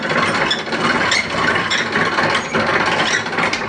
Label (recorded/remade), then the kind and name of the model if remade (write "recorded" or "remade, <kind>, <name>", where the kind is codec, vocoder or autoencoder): recorded